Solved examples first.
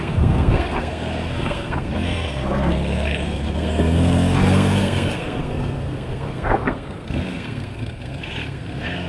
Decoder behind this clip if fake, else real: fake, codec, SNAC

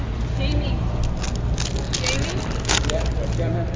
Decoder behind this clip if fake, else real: real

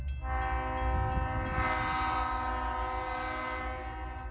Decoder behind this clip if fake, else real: real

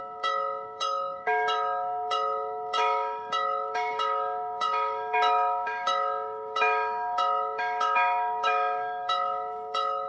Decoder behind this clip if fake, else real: fake, autoencoder, DAC-VAE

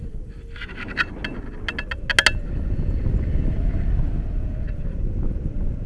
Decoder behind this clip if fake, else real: real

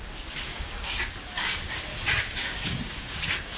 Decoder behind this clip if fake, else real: fake, codec, DAC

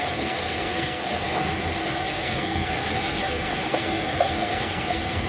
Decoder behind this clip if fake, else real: fake, codec, SNAC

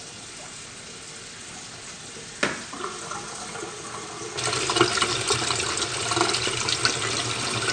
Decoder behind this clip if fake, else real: real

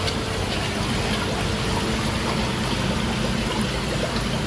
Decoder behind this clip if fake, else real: real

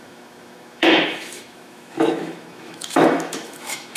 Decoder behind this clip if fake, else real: fake, autoencoder, DAC-VAE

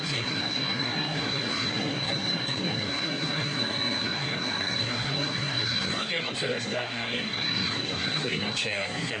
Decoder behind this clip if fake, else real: fake, codec, SNAC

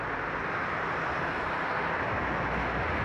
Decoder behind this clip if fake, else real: real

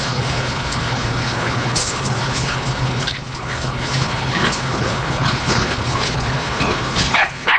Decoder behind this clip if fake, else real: fake, codec, HILCodec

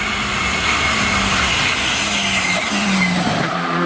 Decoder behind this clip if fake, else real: real